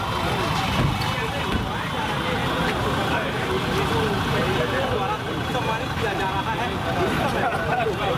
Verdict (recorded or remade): recorded